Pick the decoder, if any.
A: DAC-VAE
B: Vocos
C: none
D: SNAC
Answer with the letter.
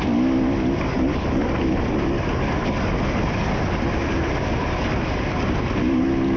C